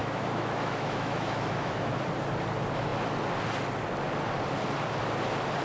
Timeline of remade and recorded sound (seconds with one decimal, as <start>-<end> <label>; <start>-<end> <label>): 0.0-1.9 remade; 1.9-5.6 recorded